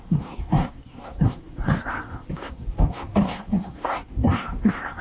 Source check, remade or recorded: remade